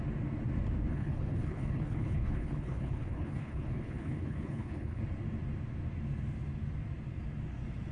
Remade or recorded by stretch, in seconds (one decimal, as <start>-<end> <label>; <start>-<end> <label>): 0.0-0.9 recorded; 0.9-5.0 remade; 5.0-7.9 recorded